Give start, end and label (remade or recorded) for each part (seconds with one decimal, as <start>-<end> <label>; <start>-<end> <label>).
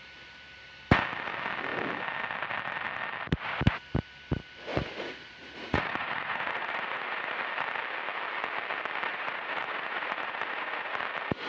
0.0-4.7 recorded; 4.7-7.4 remade; 7.4-9.1 recorded; 9.1-11.0 remade; 11.0-11.5 recorded